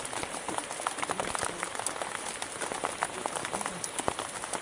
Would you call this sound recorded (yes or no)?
yes